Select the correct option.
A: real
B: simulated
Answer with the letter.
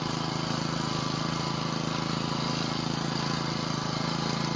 A